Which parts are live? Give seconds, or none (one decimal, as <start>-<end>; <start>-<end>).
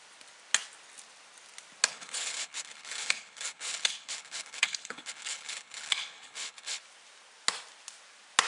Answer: 0.0-1.9; 6.8-8.5